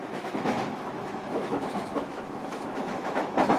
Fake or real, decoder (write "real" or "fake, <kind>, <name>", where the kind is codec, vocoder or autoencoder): fake, autoencoder, DAC-VAE